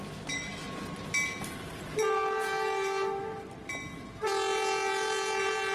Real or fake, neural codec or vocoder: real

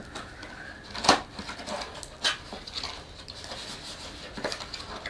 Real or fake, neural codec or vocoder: real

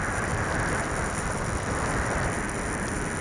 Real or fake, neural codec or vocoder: fake, vocoder, BigVGAN v2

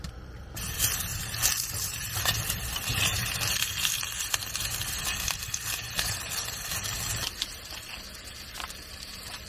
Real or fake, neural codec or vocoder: fake, vocoder, BigVGAN v2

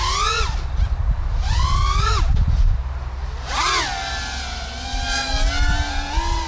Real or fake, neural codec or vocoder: real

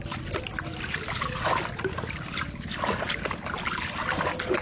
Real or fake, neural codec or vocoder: real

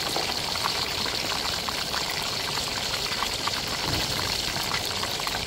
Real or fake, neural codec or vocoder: fake, vocoder, BigVGAN v2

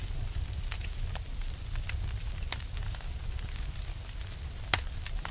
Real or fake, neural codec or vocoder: real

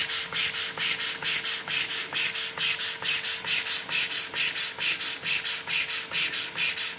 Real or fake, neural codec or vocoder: real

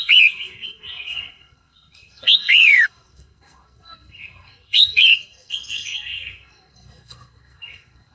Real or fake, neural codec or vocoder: fake, codec, SNAC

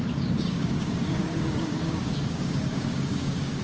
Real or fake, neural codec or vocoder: fake, codec, DAC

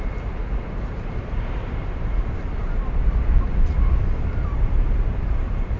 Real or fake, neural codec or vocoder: fake, vocoder, BigVGAN v2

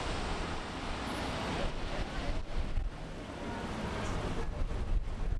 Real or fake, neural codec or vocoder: real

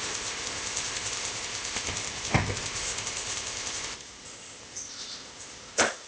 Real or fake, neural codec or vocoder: fake, codec, ZipCodec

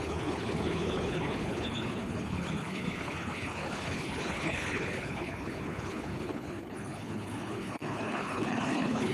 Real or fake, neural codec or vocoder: fake, codec, HILCodec